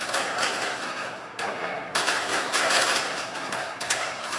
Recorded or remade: remade